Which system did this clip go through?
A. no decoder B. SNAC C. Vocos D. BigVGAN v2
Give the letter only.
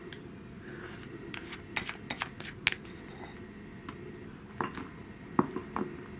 A